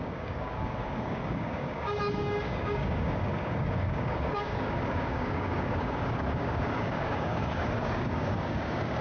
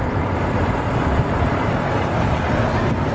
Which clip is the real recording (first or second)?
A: second